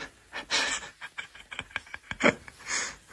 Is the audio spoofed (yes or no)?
no